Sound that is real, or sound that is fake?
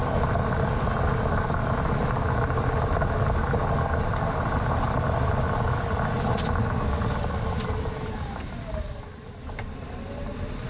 real